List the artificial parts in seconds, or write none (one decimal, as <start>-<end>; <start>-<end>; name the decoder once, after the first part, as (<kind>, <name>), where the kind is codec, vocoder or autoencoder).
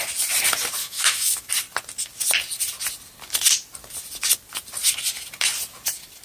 0.8-1.5 (autoencoder, DAC-VAE)